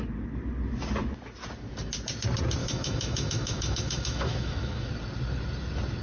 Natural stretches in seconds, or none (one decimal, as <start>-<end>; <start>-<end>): 0.0-2.6; 4.9-6.0